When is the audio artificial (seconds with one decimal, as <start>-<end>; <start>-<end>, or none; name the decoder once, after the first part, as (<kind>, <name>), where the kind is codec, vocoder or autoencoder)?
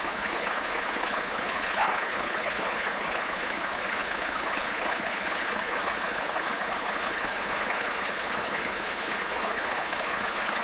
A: 0.0-10.6 (codec, HILCodec)